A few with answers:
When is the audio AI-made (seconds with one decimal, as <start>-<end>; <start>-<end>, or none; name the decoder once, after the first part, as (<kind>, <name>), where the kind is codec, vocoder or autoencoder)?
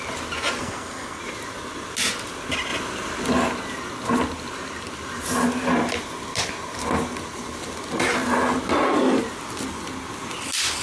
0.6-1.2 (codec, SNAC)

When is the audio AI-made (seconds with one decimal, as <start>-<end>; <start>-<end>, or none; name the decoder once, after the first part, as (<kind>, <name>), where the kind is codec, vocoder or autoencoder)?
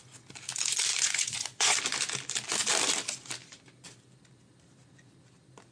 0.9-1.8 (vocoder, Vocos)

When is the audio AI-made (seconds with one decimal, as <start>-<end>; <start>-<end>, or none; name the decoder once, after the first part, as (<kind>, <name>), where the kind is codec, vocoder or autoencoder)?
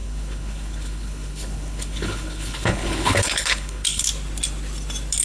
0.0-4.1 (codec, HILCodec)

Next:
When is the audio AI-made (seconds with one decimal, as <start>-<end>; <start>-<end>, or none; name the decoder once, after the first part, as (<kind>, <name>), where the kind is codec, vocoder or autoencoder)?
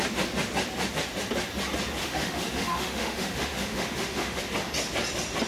2.0-4.4 (autoencoder, DAC-VAE)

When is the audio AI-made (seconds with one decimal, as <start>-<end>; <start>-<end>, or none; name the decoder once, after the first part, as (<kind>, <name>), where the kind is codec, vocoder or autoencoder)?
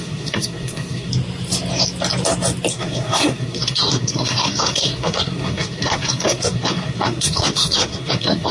0.0-1.1 (codec, SNAC); 2.7-8.5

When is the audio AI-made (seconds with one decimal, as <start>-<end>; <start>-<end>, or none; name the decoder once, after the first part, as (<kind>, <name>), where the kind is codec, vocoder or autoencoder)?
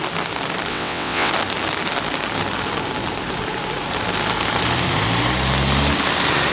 0.7-1.3 (vocoder, WaveNeXt)